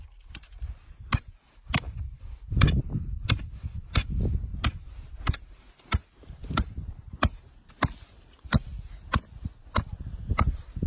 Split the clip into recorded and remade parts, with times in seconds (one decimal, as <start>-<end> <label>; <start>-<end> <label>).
0.0-4.5 recorded; 4.5-7.7 remade; 7.7-8.7 recorded; 8.7-9.2 remade; 9.2-10.9 recorded